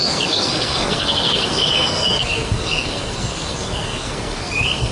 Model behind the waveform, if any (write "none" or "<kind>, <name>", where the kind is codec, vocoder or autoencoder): codec, SNAC